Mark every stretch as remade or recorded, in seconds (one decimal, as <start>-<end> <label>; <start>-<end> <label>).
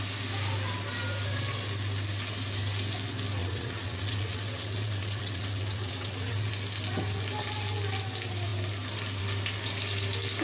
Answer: 0.0-3.4 recorded; 3.4-6.5 remade; 6.5-10.4 recorded